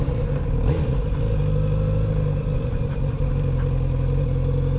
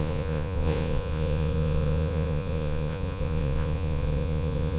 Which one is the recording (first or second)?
first